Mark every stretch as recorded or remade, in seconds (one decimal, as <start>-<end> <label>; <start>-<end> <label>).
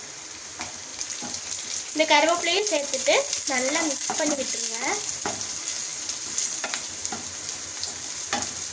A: 0.0-8.7 remade